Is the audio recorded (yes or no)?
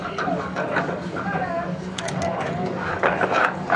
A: no